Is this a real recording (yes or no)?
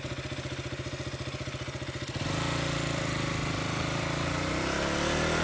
yes